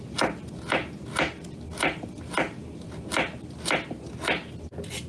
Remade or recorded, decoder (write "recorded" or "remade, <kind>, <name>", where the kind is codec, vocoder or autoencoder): recorded